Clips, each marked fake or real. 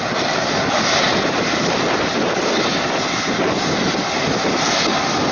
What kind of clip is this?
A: real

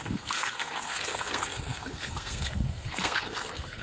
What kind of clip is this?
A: fake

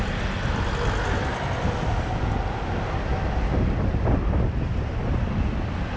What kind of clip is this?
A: real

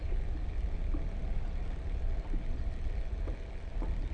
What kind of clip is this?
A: real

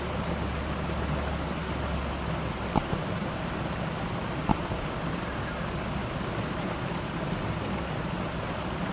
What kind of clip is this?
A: real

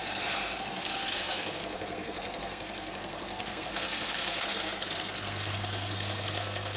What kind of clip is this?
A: fake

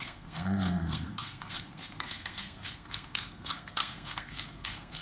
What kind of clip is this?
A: fake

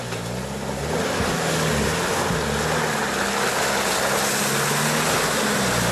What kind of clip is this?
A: real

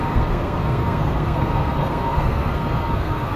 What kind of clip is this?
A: fake